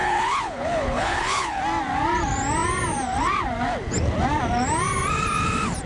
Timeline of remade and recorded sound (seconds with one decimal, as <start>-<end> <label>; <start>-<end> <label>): 0.0-1.6 remade; 1.6-5.9 recorded